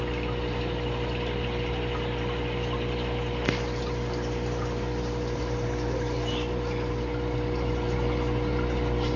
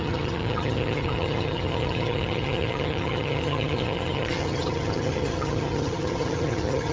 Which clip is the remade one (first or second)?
second